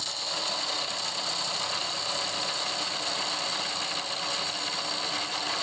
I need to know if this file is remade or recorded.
recorded